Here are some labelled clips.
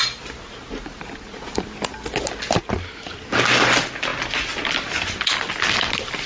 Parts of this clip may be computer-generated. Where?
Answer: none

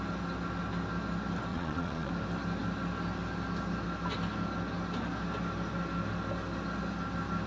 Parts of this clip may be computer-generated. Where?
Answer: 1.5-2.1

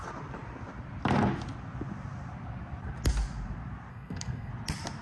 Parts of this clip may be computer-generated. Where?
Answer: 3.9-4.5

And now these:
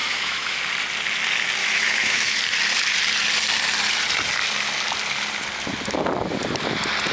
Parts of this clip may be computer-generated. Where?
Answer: 0.0-0.6; 1.6-2.4